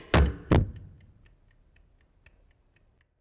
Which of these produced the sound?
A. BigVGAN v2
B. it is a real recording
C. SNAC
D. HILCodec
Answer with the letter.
B